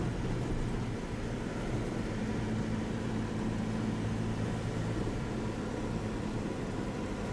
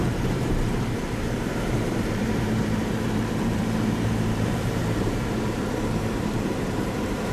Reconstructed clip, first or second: second